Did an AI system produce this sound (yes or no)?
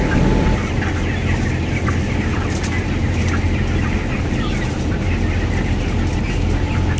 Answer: no